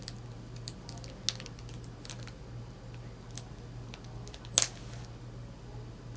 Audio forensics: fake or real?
real